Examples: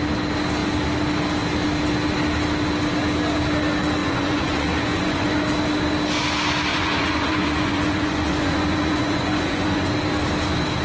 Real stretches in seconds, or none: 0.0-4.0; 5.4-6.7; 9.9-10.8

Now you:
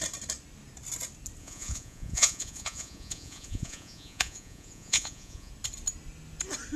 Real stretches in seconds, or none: 0.0-1.4; 5.5-6.8

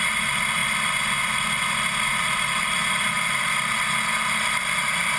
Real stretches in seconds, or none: 0.0-5.2

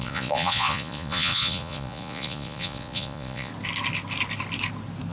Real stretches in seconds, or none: 3.5-5.1

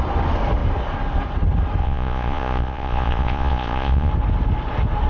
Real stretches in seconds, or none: 0.0-1.8; 4.1-5.1

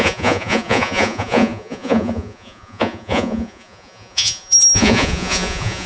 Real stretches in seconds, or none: none

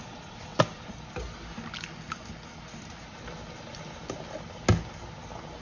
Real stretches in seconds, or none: 0.0-5.6